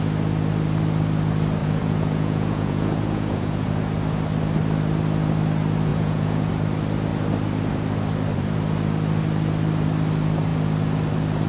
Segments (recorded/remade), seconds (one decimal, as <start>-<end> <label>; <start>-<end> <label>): 0.0-1.6 recorded; 1.6-3.7 remade; 3.7-5.9 recorded; 5.9-6.5 remade; 6.5-11.5 recorded